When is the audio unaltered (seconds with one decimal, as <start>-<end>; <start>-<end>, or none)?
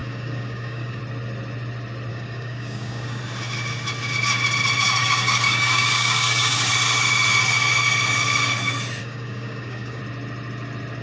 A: 1.0-2.1; 3.2-5.0; 6.7-9.0; 10.0-11.0